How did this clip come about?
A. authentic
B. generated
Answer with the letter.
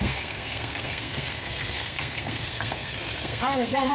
B